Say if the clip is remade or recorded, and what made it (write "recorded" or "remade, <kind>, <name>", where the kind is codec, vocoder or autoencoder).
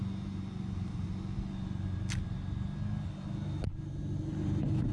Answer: recorded